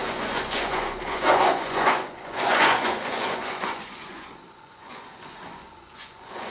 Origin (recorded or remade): remade